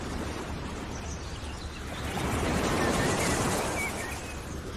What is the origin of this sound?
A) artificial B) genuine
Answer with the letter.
B